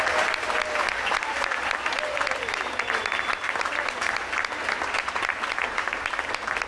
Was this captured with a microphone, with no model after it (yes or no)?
yes